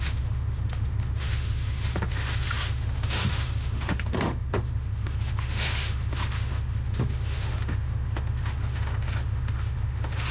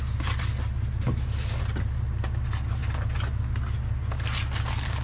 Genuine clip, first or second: second